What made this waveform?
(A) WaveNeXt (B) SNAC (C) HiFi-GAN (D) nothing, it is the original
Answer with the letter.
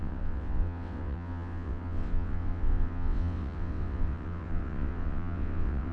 A